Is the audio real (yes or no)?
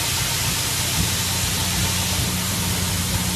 yes